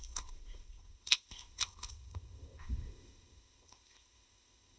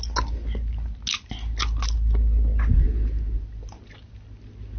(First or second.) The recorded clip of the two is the second